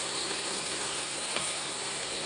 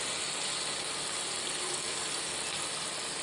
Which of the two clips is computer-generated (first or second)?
first